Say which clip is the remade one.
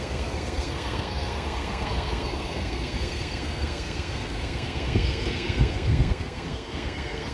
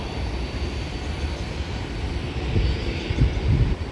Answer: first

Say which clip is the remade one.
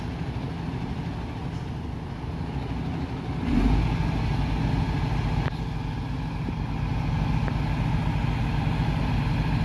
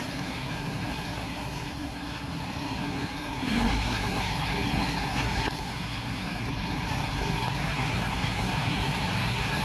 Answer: second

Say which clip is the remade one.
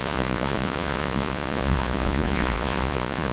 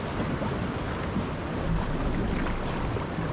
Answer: first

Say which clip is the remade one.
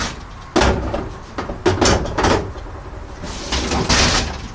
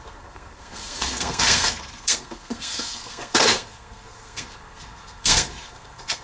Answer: second